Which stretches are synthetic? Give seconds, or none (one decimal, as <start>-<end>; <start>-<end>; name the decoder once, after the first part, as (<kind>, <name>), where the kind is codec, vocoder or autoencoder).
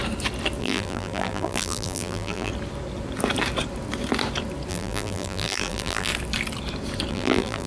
0.6-2.5 (vocoder, BigVGAN v2); 4.7-6.1; 7.1-7.7